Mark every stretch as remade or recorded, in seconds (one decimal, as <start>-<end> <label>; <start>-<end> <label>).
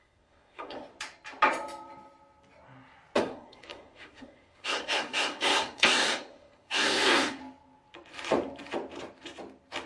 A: 0.0-0.9 remade; 0.9-3.2 recorded; 3.2-7.4 remade; 7.4-9.9 recorded